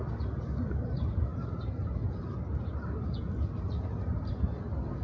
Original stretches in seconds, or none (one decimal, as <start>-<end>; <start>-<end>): 0.0-5.0